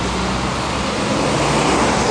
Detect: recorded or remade recorded